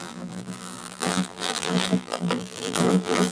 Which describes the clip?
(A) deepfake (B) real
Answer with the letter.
A